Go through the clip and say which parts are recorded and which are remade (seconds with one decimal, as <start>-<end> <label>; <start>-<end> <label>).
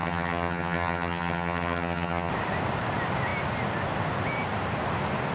0.0-2.3 remade; 2.3-5.3 recorded